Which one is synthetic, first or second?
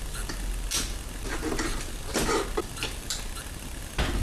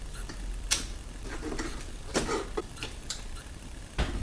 second